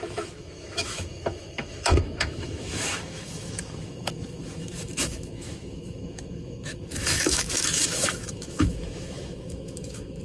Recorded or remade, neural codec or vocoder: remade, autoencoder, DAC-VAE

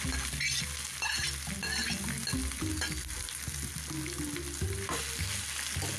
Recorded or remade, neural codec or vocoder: recorded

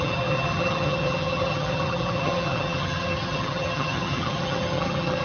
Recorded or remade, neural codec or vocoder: remade, vocoder, HiFi-GAN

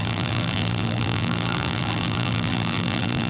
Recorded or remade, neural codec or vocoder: remade, vocoder, BigVGAN v2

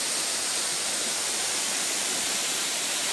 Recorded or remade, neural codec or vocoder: remade, vocoder, BigVGAN v2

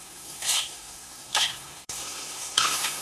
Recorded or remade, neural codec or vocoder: remade, codec, SNAC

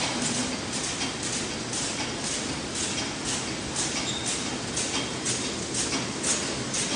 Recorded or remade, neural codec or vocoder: recorded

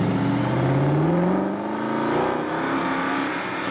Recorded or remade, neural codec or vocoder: recorded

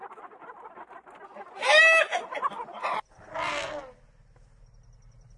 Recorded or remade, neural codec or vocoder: recorded